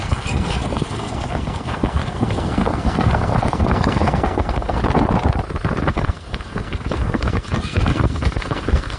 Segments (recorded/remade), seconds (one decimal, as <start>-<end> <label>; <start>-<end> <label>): 0.0-4.8 remade; 4.8-5.9 recorded; 5.9-9.0 remade